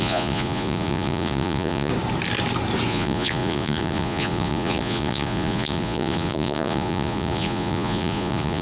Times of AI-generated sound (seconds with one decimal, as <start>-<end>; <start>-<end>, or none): 0.0-1.9; 2.9-8.6